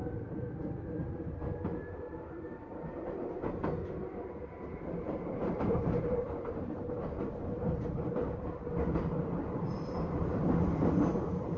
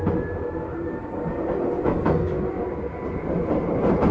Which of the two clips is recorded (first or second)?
second